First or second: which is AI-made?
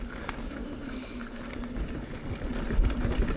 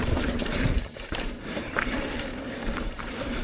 second